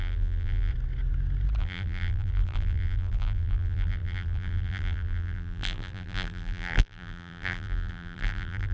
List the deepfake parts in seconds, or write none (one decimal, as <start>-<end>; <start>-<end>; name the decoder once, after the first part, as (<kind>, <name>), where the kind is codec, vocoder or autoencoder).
0.0-0.7 (vocoder, BigVGAN v2); 1.6-8.7